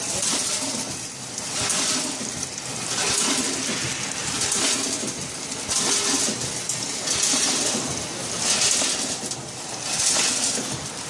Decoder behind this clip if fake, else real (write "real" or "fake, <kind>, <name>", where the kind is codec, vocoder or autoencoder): real